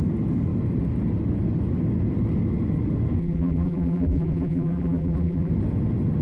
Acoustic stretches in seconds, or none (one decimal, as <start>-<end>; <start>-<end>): 0.0-3.2; 5.5-6.2